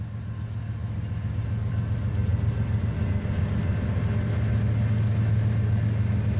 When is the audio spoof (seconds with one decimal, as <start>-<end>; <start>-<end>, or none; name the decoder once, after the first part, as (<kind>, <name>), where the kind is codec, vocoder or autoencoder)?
none